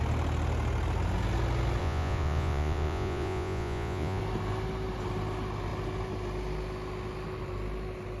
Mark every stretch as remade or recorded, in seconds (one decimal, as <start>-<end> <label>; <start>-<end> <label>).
0.0-1.8 recorded; 1.8-4.2 remade; 4.2-8.2 recorded